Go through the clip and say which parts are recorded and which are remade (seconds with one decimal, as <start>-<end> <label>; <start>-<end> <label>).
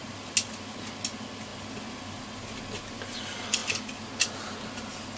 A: 0.0-5.2 recorded